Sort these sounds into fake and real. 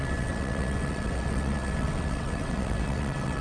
fake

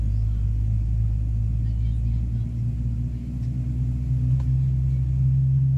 real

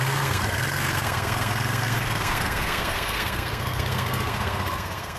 fake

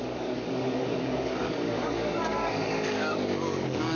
fake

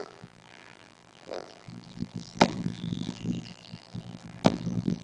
fake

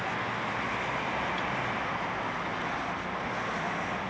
real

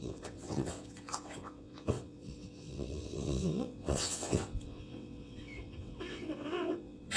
fake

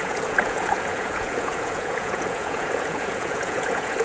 fake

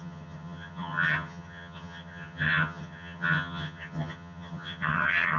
fake